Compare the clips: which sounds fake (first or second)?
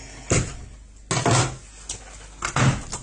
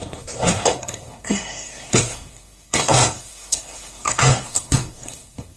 second